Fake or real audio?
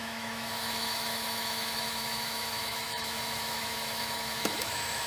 fake